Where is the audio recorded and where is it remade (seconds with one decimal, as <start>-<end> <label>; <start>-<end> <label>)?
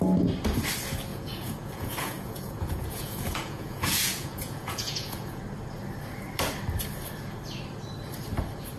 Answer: 0.0-1.1 recorded; 1.1-5.4 remade; 5.4-8.8 recorded